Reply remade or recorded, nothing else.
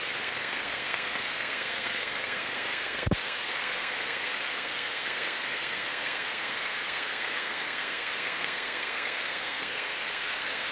remade